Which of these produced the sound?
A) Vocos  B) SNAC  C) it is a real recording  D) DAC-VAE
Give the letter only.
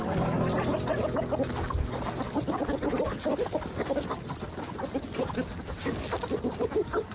C